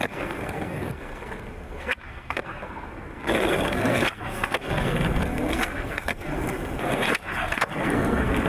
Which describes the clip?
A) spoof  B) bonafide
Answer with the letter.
A